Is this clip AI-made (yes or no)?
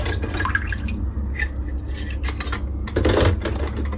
no